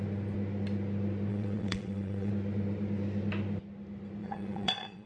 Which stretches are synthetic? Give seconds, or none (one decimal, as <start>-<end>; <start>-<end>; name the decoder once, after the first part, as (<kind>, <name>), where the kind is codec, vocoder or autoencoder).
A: 1.3-2.3 (vocoder, WaveNeXt); 4.2-5.1